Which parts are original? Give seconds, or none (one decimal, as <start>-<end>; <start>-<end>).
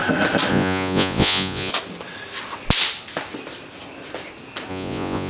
0.0-0.5; 1.7-4.7